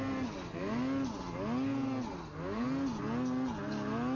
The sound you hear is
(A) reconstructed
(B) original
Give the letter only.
B